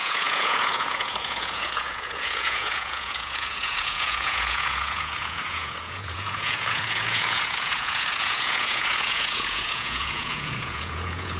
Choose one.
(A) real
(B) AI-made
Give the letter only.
B